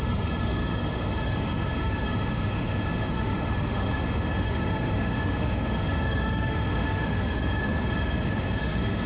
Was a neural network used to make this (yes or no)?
yes